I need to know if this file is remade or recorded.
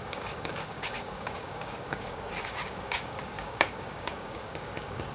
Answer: remade